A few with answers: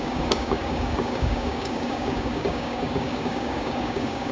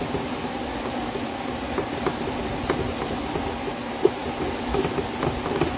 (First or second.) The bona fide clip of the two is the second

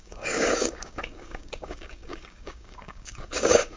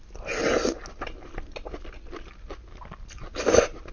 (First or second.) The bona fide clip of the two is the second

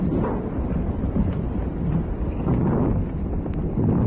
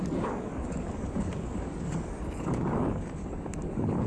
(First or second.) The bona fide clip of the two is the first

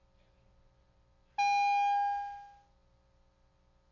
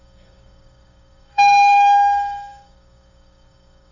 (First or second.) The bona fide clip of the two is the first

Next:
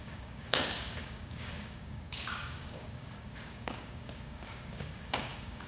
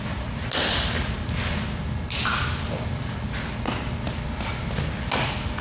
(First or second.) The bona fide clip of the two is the second